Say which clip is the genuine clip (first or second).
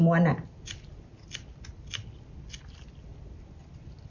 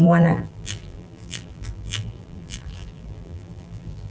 first